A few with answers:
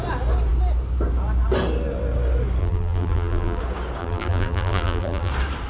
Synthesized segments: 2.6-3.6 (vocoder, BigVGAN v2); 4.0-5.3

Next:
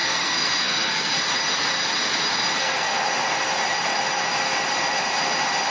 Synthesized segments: 0.0-1.2 (codec, SNAC); 2.6-3.1